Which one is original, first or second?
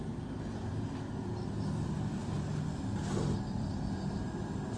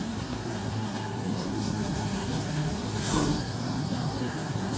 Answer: first